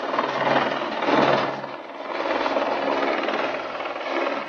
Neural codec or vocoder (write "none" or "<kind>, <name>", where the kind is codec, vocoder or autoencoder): none